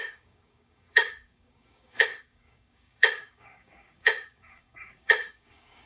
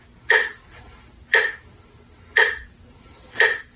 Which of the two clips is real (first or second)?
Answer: second